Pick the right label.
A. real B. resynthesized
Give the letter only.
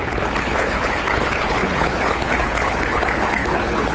B